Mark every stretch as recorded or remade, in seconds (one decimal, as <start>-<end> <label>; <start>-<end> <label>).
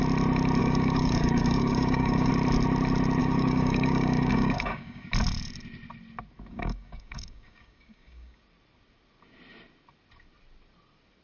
0.0-0.6 recorded; 0.6-2.3 remade; 2.3-3.2 recorded; 3.2-5.1 remade; 5.1-6.5 recorded; 6.5-8.4 remade; 8.4-11.2 recorded